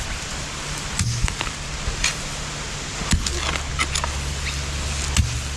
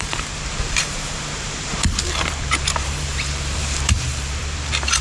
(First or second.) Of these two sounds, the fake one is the second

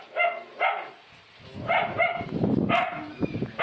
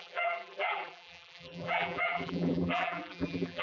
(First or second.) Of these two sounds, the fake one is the second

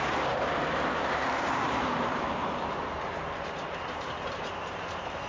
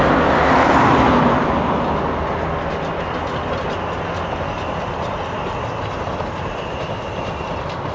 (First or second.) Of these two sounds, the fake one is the first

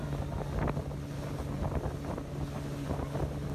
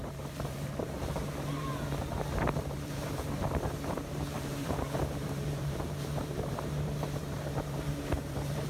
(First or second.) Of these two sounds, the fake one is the second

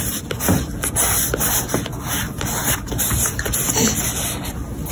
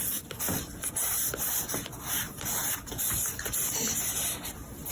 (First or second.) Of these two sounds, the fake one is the second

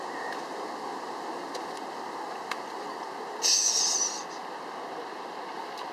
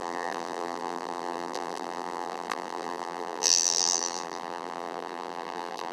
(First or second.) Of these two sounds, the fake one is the second